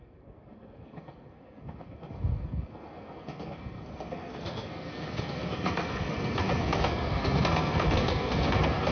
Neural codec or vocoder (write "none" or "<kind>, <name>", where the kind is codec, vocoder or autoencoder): codec, SNAC